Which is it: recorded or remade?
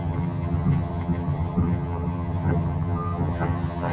remade